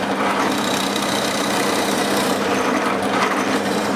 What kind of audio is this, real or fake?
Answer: fake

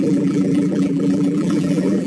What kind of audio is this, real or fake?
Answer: fake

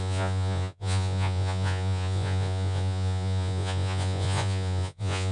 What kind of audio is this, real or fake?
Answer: fake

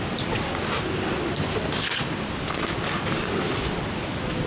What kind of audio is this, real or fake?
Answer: real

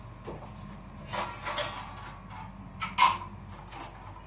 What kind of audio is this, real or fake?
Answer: real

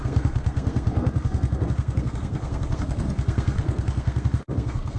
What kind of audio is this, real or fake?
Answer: fake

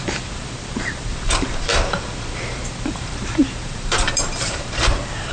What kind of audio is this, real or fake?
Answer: fake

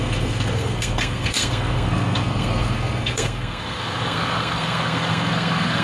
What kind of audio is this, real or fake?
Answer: fake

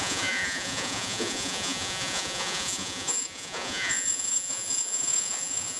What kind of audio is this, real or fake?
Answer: fake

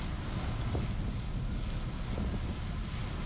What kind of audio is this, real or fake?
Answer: real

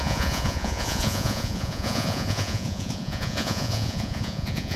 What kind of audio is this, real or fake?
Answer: fake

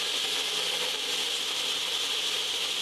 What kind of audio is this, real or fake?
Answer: real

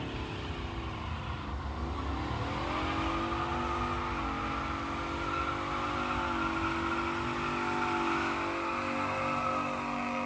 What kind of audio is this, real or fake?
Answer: real